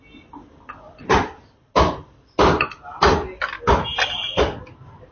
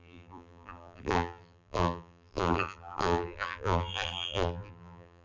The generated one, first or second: second